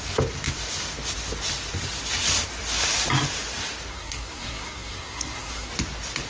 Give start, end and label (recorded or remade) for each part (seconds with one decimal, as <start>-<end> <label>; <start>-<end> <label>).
0.0-3.9 recorded; 3.9-5.7 remade; 5.7-6.3 recorded